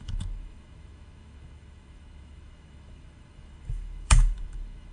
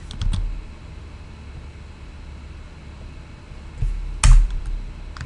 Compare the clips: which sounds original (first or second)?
second